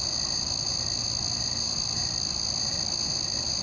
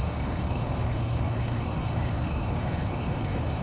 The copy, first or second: second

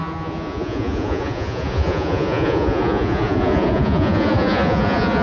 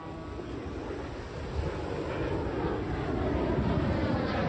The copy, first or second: first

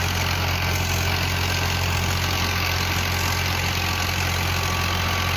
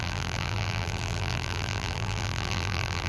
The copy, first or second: second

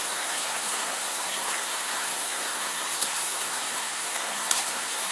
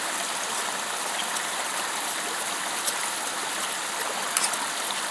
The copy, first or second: first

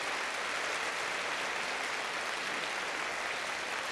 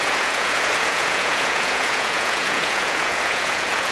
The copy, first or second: second